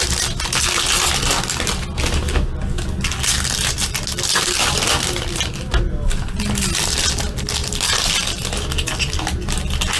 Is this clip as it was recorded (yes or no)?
yes